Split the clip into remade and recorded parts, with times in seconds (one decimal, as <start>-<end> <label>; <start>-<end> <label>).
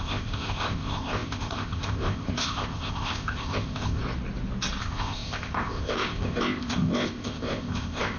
0.0-4.0 remade; 4.0-4.8 recorded; 4.8-8.2 remade